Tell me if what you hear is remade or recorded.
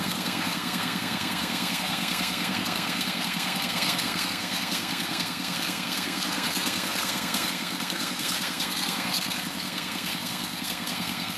remade